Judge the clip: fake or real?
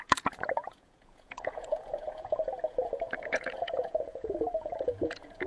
fake